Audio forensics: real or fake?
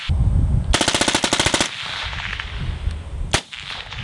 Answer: real